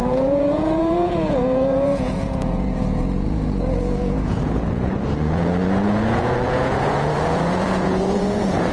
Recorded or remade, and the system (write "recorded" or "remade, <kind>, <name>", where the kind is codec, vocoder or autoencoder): remade, vocoder, Vocos